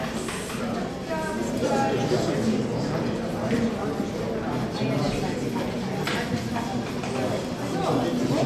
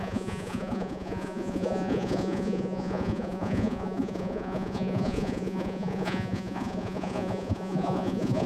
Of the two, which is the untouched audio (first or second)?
first